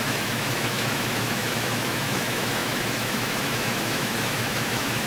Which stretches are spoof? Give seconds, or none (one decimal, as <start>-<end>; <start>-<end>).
0.0-5.1